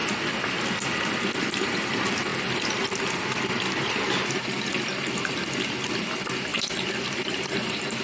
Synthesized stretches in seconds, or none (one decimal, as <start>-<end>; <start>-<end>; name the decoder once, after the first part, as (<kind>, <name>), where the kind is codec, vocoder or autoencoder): 6.5-8.0 (vocoder, BigVGAN v2)

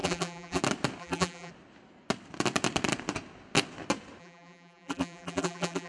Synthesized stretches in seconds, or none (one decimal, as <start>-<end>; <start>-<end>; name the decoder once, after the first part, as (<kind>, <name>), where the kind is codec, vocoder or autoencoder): 0.0-0.6 (vocoder, BigVGAN v2); 1.0-1.5; 4.2-5.9

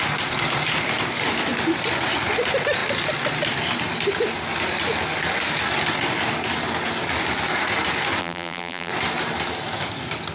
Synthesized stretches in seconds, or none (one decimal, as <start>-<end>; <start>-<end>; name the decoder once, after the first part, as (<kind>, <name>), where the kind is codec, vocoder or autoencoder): 8.2-8.9 (vocoder, BigVGAN v2)